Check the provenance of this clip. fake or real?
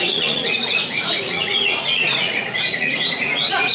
fake